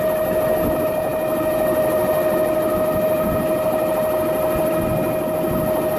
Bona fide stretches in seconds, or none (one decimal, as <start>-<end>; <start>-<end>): 0.0-6.0